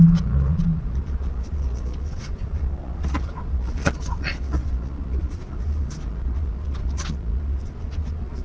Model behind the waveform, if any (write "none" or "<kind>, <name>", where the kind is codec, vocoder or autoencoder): vocoder, Vocos